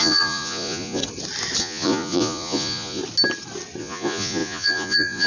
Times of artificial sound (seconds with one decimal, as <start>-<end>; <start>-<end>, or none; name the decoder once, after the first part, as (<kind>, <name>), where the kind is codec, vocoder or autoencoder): 0.0-1.0 (vocoder, Vocos); 1.6-3.0; 3.8-5.3